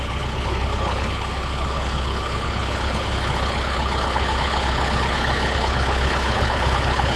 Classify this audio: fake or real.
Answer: fake